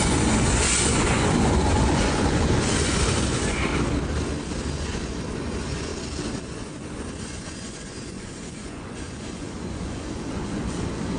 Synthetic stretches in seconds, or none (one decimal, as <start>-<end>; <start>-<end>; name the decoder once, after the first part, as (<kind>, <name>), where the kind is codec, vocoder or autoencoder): 0.0-3.7 (vocoder, Vocos); 4.7-5.9; 6.4-11.2